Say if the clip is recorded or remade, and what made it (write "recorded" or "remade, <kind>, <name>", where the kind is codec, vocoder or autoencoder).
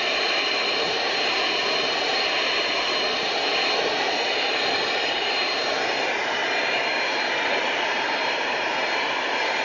remade, vocoder, BigVGAN v2